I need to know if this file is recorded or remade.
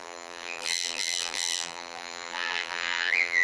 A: remade